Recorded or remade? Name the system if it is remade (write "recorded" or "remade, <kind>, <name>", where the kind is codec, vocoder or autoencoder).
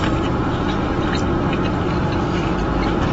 recorded